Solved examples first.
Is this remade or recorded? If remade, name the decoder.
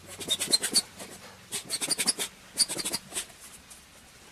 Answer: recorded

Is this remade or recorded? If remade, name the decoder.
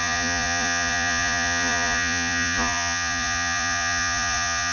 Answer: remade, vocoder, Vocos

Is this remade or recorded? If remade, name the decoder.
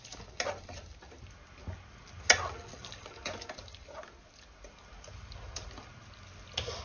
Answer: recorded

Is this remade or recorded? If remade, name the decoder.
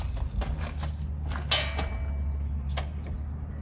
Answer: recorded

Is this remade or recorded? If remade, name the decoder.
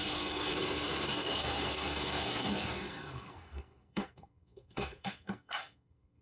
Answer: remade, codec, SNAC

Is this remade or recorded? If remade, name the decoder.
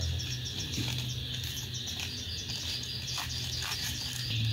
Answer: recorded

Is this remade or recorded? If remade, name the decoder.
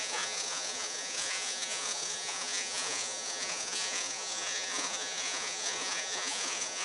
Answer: remade, vocoder, Vocos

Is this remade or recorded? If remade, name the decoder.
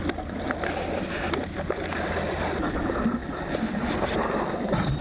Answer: remade, vocoder, BigVGAN v2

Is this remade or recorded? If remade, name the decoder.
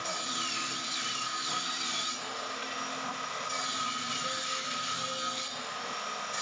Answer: recorded